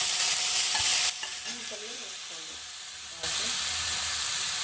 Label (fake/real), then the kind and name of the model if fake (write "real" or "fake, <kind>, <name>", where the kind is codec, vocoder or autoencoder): real